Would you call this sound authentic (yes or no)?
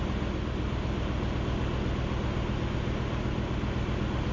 yes